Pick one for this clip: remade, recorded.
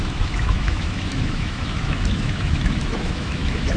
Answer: remade